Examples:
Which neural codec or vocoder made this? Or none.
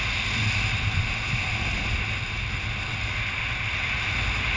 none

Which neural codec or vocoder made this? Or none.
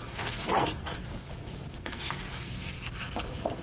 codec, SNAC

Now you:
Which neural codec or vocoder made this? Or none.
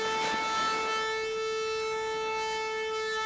none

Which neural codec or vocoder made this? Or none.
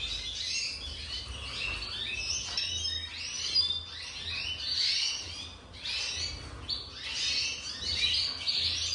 none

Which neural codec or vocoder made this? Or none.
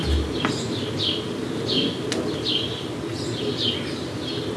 none